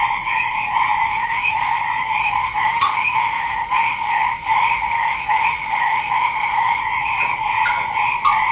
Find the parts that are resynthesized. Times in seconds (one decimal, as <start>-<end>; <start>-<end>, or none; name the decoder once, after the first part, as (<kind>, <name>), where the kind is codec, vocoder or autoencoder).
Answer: 1.1-1.8 (autoencoder, DAC-VAE); 2.2-6.8